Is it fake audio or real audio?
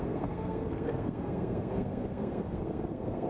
fake